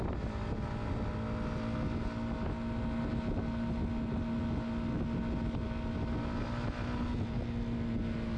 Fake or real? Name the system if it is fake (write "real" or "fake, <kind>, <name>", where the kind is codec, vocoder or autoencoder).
real